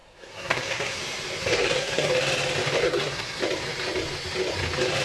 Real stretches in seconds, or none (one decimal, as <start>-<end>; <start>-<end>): 1.0-1.4; 2.1-2.8; 3.4-5.0